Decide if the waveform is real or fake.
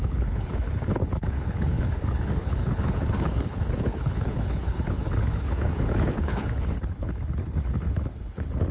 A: fake